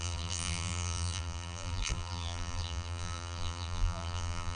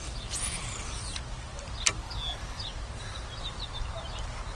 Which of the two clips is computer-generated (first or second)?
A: first